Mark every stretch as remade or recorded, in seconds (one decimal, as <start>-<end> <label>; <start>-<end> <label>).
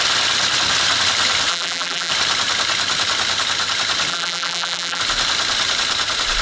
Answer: 0.0-1.5 recorded; 1.5-2.1 remade; 2.1-4.1 recorded; 4.1-5.0 remade; 5.0-6.4 recorded